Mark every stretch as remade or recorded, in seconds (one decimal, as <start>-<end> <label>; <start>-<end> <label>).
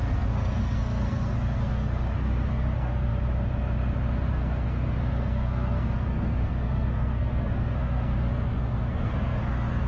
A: 0.0-3.1 remade; 3.1-4.3 recorded; 4.3-9.9 remade